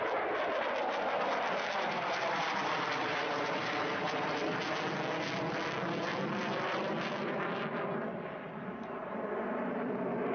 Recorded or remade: recorded